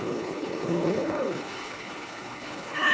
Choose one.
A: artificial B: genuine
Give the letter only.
A